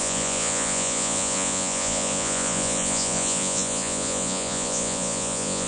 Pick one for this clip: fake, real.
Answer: fake